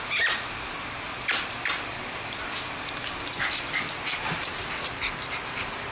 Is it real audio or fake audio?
fake